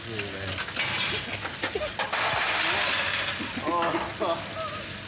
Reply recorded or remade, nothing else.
recorded